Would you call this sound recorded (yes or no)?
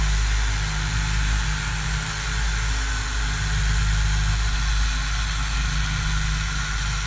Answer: yes